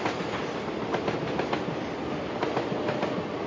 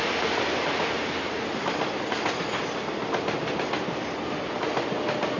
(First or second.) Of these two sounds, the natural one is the second